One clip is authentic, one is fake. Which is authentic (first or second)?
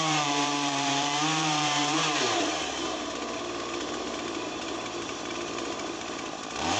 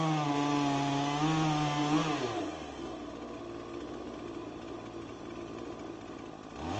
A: second